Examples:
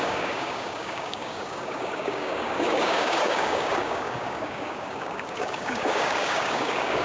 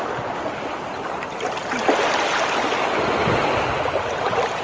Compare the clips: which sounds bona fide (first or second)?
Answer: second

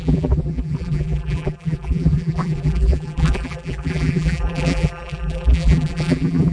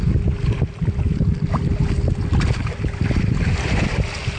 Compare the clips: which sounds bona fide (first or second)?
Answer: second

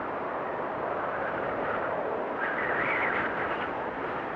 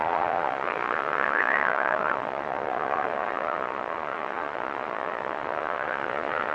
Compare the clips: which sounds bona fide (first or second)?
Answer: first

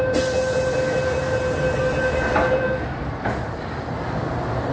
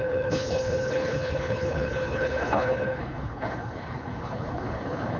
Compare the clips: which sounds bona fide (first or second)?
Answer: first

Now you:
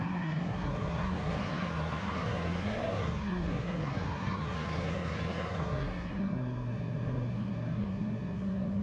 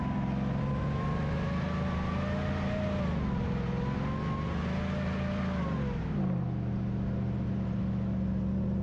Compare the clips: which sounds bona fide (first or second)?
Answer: second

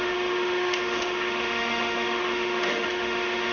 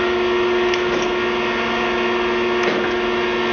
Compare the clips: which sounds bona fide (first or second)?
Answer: second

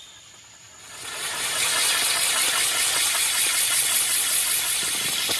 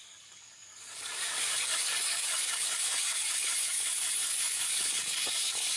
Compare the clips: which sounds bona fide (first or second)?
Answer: first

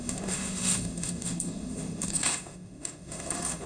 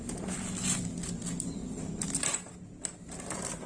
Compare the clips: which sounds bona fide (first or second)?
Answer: second